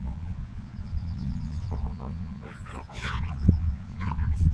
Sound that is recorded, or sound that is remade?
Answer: remade